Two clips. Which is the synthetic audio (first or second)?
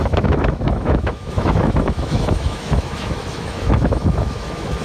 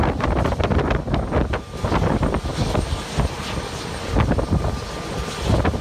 first